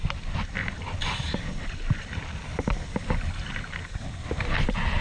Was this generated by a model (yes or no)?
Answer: no